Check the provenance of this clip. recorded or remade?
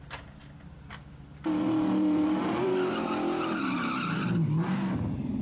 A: remade